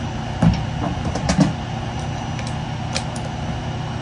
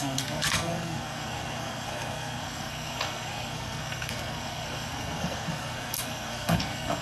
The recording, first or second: first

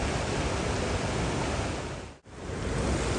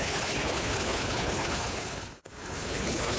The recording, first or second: first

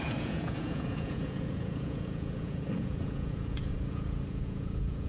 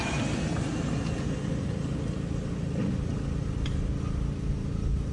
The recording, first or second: second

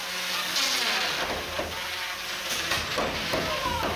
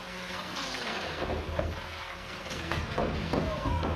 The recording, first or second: first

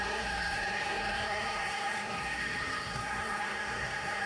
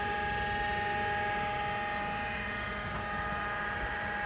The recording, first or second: second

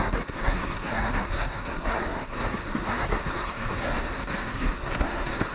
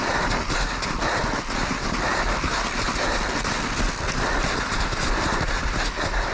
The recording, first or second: second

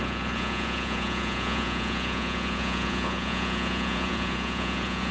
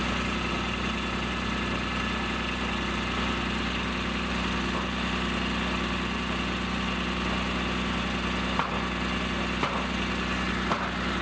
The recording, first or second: second